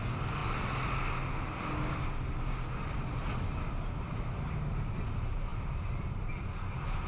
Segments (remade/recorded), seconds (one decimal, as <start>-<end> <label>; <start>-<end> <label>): 0.0-7.1 recorded

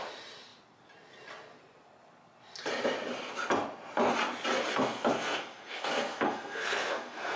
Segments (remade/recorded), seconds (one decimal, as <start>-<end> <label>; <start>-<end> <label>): 0.0-4.7 recorded; 4.7-7.4 remade

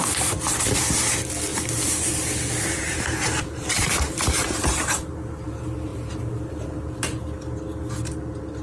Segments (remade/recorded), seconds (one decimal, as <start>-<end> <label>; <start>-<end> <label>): 0.0-1.5 recorded; 1.5-5.5 remade; 5.5-5.9 recorded; 5.9-7.2 remade; 7.2-8.6 recorded

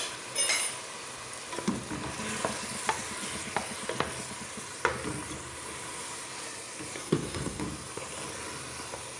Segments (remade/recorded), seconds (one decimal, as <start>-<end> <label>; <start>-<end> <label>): 0.0-7.0 recorded; 7.0-7.6 remade; 7.6-9.2 recorded

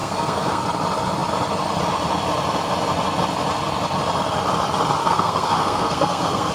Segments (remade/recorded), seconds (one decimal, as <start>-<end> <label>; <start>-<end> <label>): 0.0-0.6 remade; 0.6-5.0 recorded; 5.0-6.5 remade

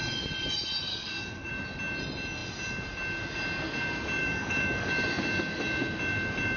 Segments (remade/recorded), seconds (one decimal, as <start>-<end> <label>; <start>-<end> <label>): 0.0-0.9 recorded; 0.9-1.5 remade; 1.5-4.2 recorded; 4.2-4.9 remade; 4.9-6.6 recorded

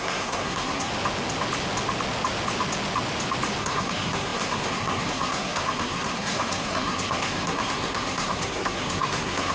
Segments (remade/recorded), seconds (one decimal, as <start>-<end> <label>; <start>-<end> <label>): 0.0-0.9 remade; 0.9-3.6 recorded; 3.6-9.5 remade